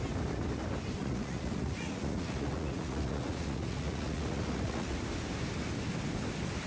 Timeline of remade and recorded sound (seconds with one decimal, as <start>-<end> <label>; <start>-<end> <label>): 0.0-1.0 recorded; 1.0-5.0 remade; 5.0-6.7 recorded